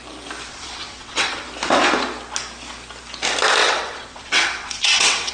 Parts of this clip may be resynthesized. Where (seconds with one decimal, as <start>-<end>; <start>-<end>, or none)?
0.5-1.5; 3.6-5.3